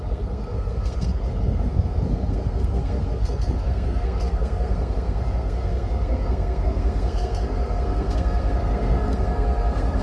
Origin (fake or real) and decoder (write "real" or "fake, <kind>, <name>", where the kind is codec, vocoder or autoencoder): fake, codec, SNAC